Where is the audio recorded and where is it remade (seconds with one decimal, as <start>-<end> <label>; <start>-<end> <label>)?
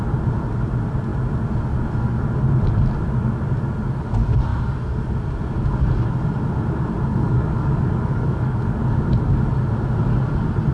0.0-7.1 recorded; 7.1-8.8 remade; 8.8-10.7 recorded